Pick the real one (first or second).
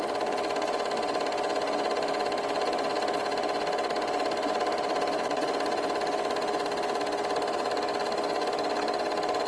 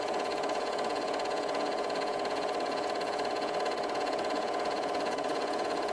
first